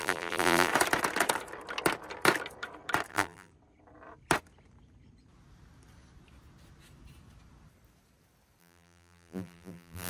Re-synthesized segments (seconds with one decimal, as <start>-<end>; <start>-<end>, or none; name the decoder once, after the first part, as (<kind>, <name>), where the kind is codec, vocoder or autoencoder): 0.0-0.7 (vocoder, BigVGAN v2); 3.1-3.5; 8.6-10.1